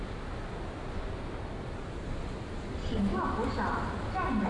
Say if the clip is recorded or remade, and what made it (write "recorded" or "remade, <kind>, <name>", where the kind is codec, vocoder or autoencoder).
recorded